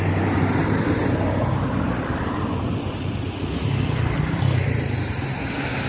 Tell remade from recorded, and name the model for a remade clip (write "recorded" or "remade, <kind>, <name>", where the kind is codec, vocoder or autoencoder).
recorded